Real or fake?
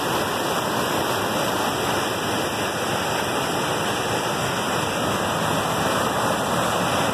real